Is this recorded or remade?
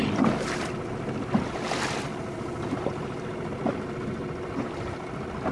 recorded